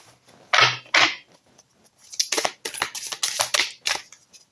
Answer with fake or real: real